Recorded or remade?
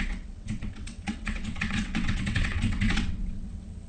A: remade